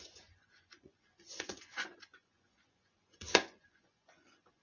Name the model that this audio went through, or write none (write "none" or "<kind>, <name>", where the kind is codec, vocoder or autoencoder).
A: vocoder, Vocos